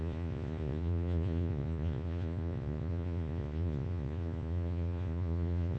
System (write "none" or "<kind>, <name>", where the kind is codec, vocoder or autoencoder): vocoder, Vocos